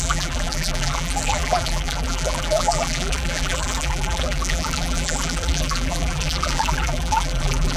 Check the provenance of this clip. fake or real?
fake